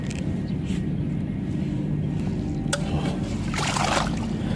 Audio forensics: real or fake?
real